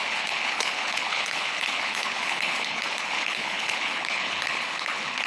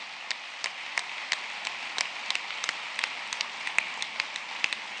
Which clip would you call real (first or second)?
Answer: second